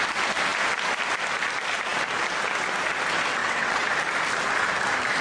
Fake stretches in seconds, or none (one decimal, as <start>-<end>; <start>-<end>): 3.4-3.9